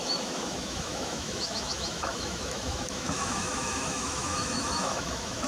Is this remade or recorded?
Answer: remade